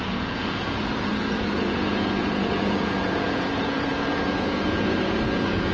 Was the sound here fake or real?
fake